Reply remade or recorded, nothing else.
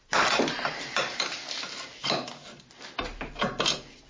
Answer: recorded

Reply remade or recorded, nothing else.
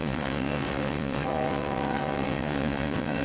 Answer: remade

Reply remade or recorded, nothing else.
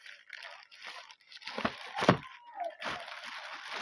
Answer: recorded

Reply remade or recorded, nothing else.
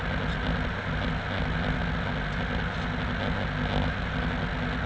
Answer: recorded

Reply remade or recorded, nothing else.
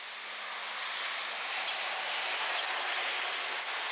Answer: recorded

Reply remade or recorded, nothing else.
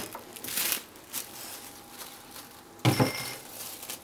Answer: recorded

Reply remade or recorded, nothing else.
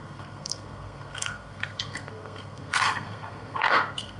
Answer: remade